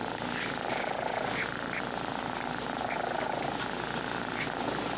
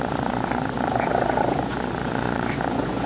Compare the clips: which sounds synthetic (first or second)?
second